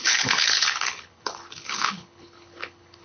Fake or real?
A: fake